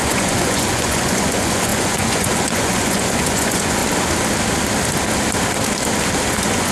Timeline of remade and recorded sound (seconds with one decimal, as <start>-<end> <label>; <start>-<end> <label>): 0.0-3.8 remade; 3.8-6.3 recorded; 6.3-6.7 remade